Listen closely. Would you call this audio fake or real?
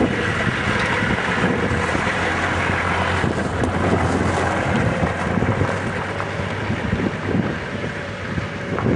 real